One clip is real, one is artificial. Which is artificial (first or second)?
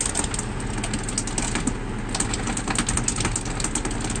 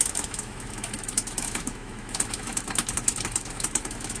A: second